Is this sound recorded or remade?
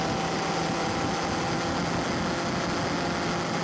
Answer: recorded